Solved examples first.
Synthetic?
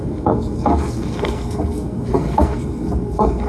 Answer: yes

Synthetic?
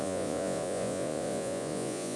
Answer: yes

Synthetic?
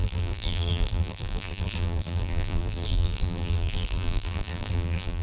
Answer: yes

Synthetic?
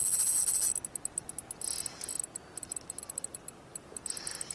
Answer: no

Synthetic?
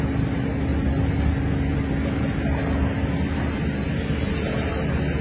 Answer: no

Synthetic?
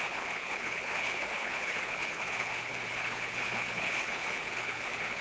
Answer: yes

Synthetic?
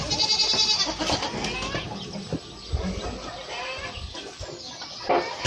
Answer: no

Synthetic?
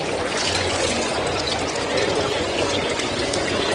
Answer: yes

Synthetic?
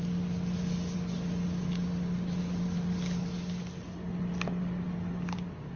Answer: no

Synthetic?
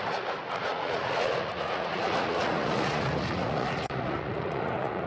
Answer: yes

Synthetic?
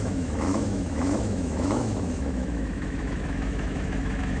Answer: yes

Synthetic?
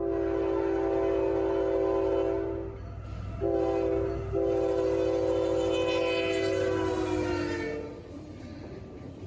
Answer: no